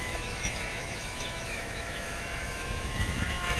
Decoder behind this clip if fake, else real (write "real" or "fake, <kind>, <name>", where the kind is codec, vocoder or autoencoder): fake, autoencoder, DAC-VAE